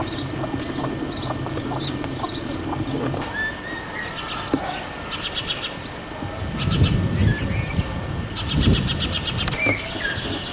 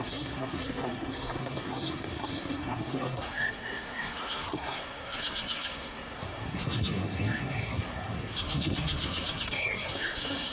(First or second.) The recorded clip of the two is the first